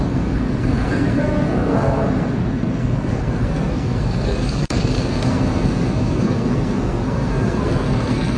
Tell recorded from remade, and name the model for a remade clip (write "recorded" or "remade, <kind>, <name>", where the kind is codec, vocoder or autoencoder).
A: remade, codec, SNAC